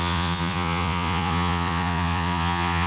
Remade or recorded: remade